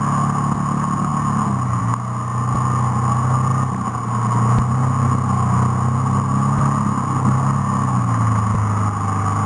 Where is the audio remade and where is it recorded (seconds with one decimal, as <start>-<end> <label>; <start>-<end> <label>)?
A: 0.0-9.5 recorded